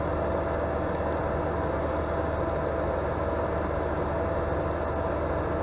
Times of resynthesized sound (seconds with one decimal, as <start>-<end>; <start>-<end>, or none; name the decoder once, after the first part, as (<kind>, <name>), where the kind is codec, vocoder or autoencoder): none